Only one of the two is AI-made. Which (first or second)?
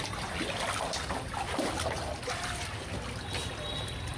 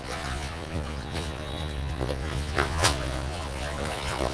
second